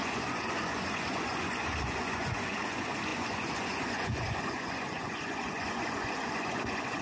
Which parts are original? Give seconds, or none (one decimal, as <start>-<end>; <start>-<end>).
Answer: none